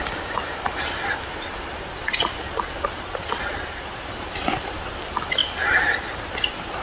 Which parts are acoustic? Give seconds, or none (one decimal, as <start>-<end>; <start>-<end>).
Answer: 0.0-6.8